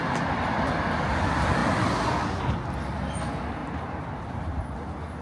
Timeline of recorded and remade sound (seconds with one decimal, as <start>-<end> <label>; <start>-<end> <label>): 0.0-3.6 recorded; 3.6-4.6 remade; 4.6-5.2 recorded